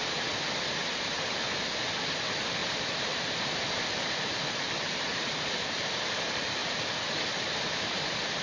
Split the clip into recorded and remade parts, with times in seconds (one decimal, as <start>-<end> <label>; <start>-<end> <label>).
0.0-6.6 remade; 6.6-7.8 recorded; 7.8-8.4 remade